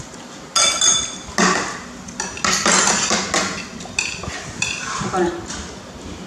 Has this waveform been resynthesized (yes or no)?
no